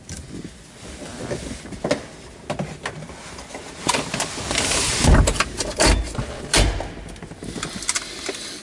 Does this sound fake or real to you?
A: real